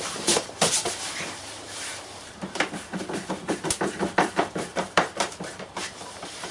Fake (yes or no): yes